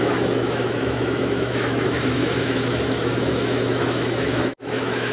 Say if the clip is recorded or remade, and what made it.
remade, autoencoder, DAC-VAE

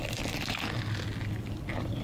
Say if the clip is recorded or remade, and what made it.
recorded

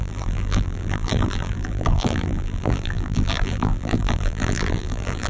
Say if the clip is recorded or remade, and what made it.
remade, vocoder, BigVGAN v2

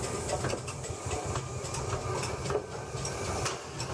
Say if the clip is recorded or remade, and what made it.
recorded